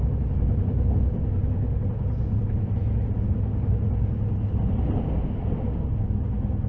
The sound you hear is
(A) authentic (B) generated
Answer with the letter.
A